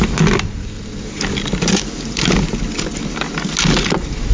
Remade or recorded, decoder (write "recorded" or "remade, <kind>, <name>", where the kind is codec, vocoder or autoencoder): recorded